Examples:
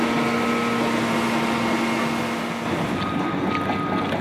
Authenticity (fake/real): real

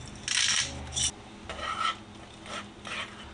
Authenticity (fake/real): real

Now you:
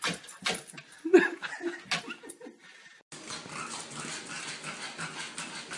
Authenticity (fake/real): real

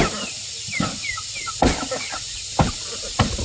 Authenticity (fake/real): real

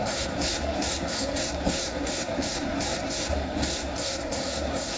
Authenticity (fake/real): fake